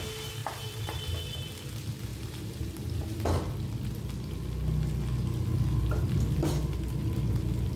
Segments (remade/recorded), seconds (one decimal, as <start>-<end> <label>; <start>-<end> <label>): 0.0-0.4 recorded; 0.4-1.0 remade; 1.0-2.1 recorded; 2.1-3.2 remade; 3.2-7.8 recorded